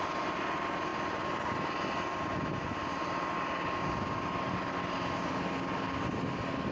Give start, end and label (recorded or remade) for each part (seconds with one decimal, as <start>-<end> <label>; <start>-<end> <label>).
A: 0.0-6.7 recorded